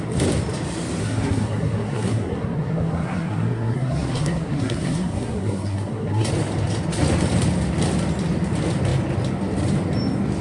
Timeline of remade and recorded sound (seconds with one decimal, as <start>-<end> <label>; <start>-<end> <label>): 0.0-1.0 recorded; 1.0-6.3 remade; 6.3-10.4 recorded